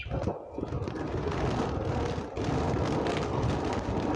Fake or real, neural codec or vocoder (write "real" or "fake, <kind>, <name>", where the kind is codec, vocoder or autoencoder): real